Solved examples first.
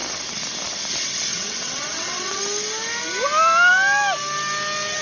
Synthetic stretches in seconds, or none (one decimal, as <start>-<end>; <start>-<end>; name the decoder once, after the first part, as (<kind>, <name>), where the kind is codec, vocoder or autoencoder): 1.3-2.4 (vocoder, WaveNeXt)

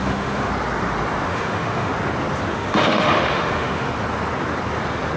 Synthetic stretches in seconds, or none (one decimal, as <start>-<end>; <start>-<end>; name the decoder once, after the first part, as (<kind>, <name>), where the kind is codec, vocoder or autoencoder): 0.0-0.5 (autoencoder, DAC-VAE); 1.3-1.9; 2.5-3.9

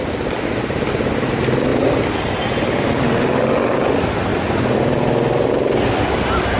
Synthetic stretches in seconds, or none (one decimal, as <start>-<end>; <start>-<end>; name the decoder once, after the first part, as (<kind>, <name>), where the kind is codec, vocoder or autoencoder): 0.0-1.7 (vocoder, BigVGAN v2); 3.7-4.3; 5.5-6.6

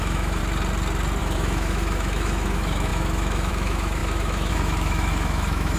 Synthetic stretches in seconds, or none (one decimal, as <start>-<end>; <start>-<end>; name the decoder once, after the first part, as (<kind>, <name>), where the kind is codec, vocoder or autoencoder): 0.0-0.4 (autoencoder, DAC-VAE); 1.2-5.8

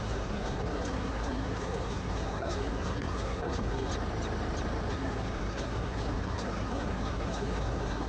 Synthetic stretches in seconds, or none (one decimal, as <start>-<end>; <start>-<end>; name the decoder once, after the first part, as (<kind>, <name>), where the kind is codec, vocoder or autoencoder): 0.0-3.9 (codec, SNAC); 4.9-8.1

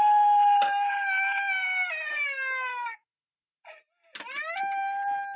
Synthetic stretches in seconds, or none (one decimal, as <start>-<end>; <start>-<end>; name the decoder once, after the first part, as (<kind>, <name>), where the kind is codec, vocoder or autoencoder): 2.7-3.6 (codec, SNAC)